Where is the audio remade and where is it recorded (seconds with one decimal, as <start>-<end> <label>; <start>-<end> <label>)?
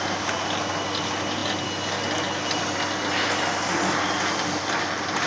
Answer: 0.0-5.3 recorded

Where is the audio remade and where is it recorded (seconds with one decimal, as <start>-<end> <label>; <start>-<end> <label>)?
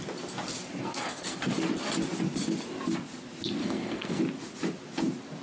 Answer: 0.0-0.8 recorded; 0.8-1.4 remade; 1.4-3.6 recorded; 3.6-4.2 remade; 4.2-5.4 recorded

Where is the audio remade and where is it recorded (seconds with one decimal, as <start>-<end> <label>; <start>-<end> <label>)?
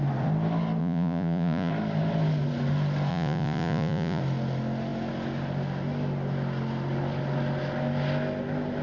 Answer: 0.0-0.8 recorded; 0.8-1.7 remade; 1.7-3.1 recorded; 3.1-4.2 remade; 4.2-8.8 recorded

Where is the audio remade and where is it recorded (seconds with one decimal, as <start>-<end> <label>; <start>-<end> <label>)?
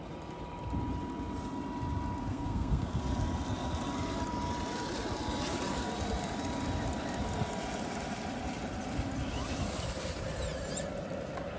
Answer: 0.0-2.2 recorded; 2.2-3.0 remade; 3.0-11.6 recorded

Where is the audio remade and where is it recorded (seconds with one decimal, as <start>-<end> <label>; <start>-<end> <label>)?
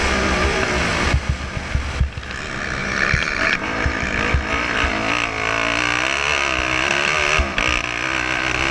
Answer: 0.0-2.8 recorded; 2.8-4.1 remade; 4.1-8.7 recorded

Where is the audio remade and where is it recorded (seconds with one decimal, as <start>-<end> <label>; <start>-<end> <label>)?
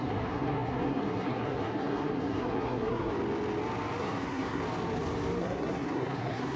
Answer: 0.0-3.1 remade; 3.1-4.0 recorded; 4.0-4.6 remade; 4.6-5.4 recorded; 5.4-6.6 remade